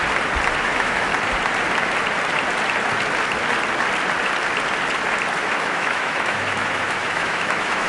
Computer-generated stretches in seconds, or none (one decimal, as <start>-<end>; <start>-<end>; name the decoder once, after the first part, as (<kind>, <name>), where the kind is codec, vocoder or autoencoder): 0.6-1.1 (autoencoder, DAC-VAE); 5.5-7.9